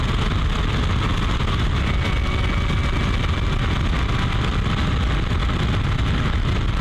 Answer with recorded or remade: recorded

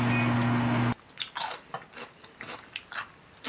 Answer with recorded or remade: recorded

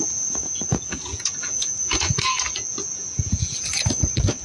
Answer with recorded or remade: remade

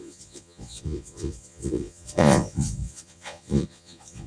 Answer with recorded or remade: remade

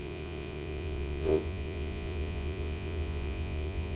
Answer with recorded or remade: remade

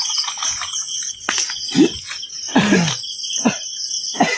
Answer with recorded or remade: recorded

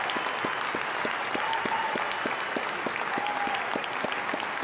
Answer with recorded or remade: recorded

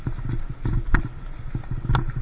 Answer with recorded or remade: recorded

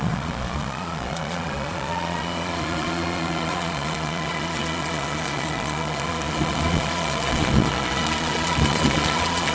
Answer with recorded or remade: remade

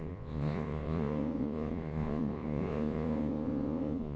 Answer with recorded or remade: remade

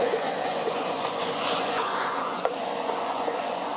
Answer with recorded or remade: remade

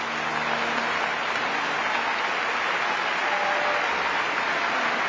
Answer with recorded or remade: recorded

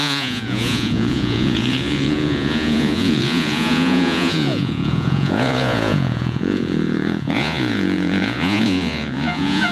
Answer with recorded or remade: remade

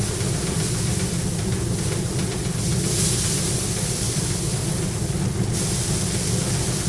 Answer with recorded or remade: recorded